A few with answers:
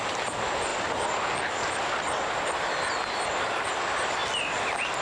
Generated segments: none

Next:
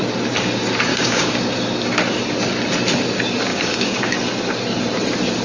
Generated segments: 0.9-1.4 (codec, DAC); 3.5-4.1

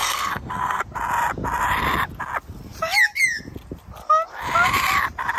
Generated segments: 0.0-0.8 (codec, SNAC)